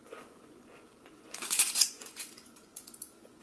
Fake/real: fake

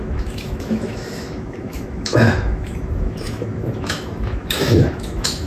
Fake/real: fake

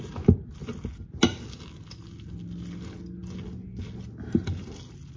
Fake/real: real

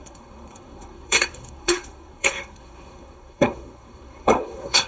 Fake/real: fake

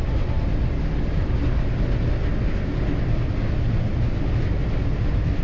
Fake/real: real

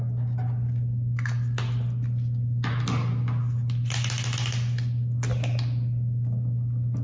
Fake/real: real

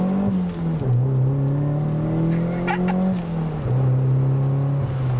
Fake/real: real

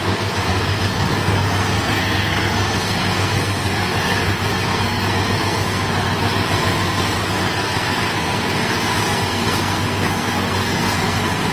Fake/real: fake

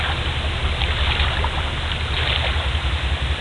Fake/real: real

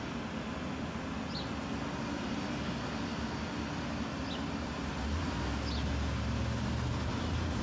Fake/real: real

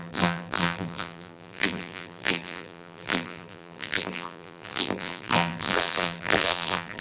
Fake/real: fake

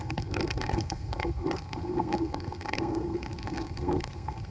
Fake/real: fake